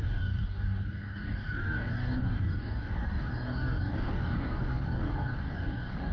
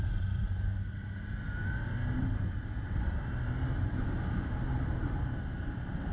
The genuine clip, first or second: second